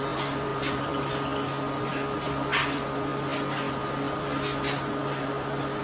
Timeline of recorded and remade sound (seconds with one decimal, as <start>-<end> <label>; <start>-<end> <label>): 0.0-0.5 recorded; 0.5-1.1 remade; 1.1-5.8 recorded